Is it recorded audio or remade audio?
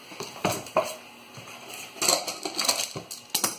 recorded